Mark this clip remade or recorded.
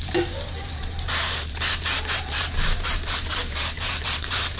remade